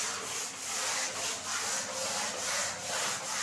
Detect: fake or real real